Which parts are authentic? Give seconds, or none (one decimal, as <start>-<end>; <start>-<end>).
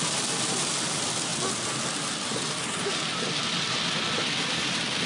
1.3-4.4